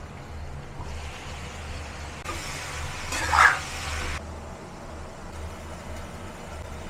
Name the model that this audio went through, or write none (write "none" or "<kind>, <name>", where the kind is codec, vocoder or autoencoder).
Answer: none